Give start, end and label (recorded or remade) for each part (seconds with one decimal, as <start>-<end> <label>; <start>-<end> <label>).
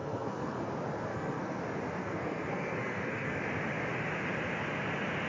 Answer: 0.0-0.7 remade; 0.7-1.1 recorded; 1.1-1.6 remade; 1.6-2.0 recorded; 2.0-3.4 remade; 3.4-5.3 recorded